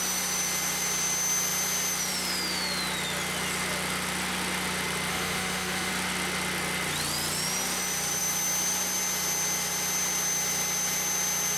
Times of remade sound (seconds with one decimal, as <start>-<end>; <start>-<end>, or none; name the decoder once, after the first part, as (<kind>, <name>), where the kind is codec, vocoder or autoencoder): 5.1-5.9 (autoencoder, DAC-VAE)